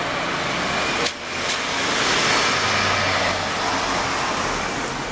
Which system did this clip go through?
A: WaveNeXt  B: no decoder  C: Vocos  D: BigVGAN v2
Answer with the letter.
B